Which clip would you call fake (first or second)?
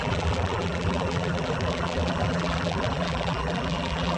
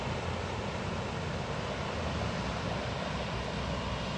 first